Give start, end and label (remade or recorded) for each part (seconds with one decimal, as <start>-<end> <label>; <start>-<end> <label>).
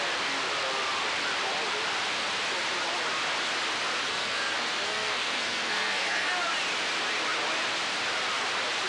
0.0-4.1 recorded; 4.1-6.3 remade; 6.3-8.9 recorded